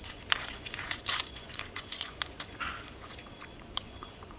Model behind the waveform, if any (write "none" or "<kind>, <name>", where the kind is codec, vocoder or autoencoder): vocoder, Vocos